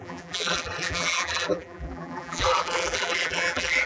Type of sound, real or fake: fake